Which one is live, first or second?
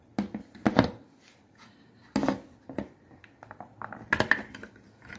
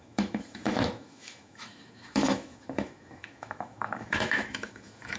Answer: first